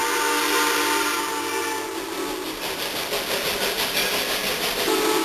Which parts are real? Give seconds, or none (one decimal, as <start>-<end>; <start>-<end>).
0.0-5.2